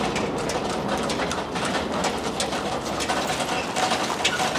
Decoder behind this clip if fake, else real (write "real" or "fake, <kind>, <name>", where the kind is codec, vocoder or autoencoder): real